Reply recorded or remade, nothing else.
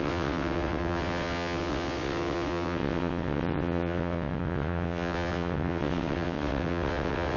remade